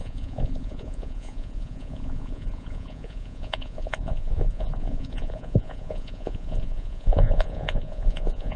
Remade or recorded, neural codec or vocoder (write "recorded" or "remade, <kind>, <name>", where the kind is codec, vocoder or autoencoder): remade, vocoder, Vocos